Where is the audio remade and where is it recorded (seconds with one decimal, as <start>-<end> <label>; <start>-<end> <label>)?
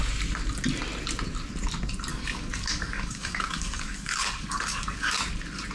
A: 0.0-2.1 recorded; 2.1-5.2 remade; 5.2-5.7 recorded